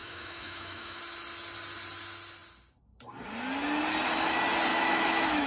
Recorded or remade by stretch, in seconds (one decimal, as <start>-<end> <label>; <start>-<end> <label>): 0.0-1.0 remade; 1.0-4.7 recorded; 4.7-5.5 remade